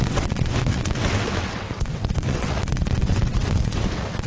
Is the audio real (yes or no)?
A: no